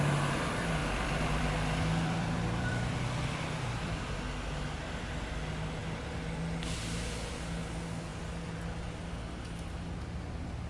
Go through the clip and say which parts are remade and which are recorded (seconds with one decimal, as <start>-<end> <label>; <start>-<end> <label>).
0.0-0.8 recorded; 0.8-4.0 remade; 4.0-10.7 recorded